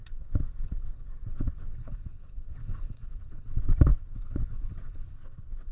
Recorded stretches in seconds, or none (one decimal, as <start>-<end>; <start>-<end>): none